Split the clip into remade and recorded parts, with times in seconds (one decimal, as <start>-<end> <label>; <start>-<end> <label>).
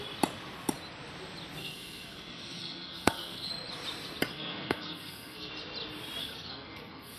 0.0-1.6 recorded; 1.6-3.5 remade; 3.5-4.3 recorded; 4.3-5.5 remade; 5.5-6.2 recorded; 6.2-7.2 remade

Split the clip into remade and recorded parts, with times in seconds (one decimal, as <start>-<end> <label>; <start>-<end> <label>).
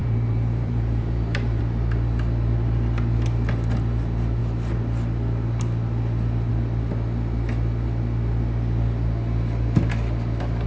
0.0-1.6 remade; 1.6-10.7 recorded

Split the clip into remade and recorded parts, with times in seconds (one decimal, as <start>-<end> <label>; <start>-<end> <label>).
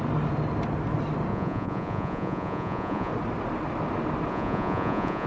0.0-1.3 recorded; 1.3-3.1 remade; 3.1-4.3 recorded; 4.3-5.3 remade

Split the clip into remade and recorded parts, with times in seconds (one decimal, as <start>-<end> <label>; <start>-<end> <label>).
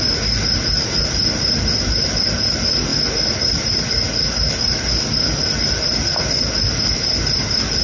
0.0-7.8 recorded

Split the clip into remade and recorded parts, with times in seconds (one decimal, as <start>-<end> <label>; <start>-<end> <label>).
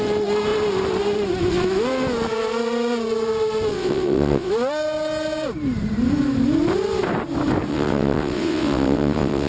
0.0-3.7 recorded; 3.7-4.5 remade; 4.5-7.7 recorded; 7.7-9.5 remade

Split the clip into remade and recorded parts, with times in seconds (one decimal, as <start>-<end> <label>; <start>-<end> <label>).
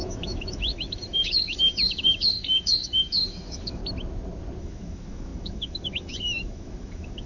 0.0-3.8 remade; 3.8-4.6 recorded; 4.6-7.3 remade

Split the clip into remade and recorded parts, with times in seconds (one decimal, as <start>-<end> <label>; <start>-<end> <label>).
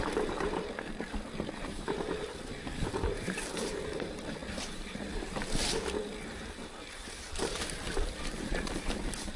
0.0-9.4 remade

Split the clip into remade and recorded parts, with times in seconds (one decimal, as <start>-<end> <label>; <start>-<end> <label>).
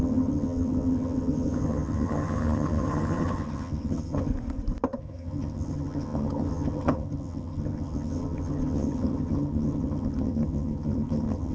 0.0-4.3 remade; 4.3-5.0 recorded; 5.0-11.5 remade